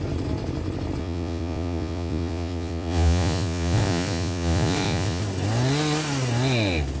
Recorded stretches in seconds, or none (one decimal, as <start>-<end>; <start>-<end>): 0.0-1.0; 5.2-7.0